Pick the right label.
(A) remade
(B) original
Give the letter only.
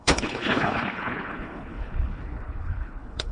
A